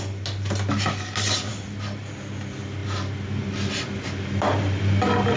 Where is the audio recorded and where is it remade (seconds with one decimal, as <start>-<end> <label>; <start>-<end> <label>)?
0.0-1.5 recorded; 1.5-2.1 remade; 2.1-5.4 recorded